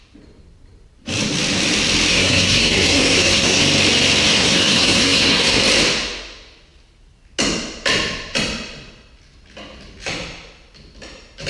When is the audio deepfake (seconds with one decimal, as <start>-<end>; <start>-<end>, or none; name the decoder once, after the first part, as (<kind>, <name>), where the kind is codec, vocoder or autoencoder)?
2.1-3.6 (codec, SNAC); 4.3-5.6